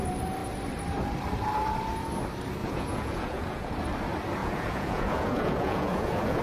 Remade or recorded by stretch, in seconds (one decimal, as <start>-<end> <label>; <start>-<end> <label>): 0.0-2.6 recorded; 2.6-3.7 remade; 3.7-4.4 recorded; 4.4-6.4 remade